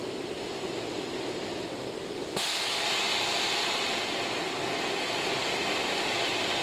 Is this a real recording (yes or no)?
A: yes